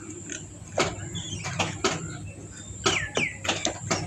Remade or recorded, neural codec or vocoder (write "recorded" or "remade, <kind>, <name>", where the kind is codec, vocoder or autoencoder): recorded